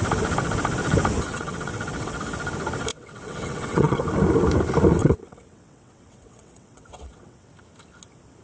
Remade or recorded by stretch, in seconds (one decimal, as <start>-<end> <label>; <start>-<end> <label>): 0.0-1.3 recorded; 1.3-2.2 remade; 2.2-2.9 recorded; 2.9-4.0 remade; 4.0-5.0 recorded; 5.0-7.5 remade; 7.5-8.4 recorded